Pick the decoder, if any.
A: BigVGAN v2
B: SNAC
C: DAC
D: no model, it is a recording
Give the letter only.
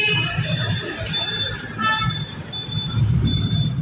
A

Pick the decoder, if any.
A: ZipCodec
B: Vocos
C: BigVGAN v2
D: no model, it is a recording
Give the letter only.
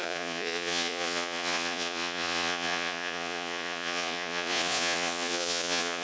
B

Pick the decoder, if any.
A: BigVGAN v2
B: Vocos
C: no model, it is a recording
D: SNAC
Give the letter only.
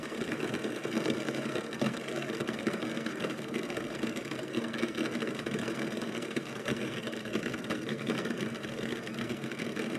D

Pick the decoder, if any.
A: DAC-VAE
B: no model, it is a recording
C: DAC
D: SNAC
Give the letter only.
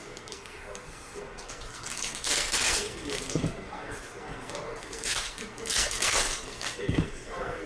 D